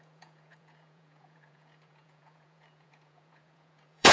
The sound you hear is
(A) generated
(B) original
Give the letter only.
A